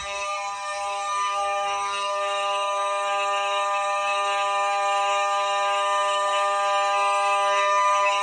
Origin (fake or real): fake